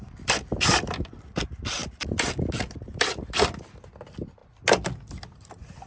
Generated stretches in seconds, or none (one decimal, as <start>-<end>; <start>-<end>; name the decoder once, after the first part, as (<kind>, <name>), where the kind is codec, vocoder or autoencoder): 0.0-4.4 (vocoder, BigVGAN v2); 5.1-5.9